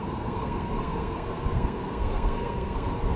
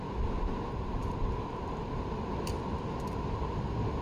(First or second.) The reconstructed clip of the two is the first